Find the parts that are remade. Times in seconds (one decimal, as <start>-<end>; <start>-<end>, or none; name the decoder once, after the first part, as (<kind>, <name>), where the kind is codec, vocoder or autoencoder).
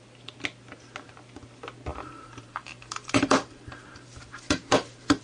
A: 1.9-5.2 (vocoder, BigVGAN v2)